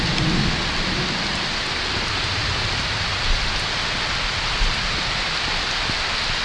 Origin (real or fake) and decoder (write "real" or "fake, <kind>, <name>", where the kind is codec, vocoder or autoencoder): real